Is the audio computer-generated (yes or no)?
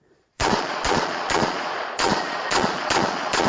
yes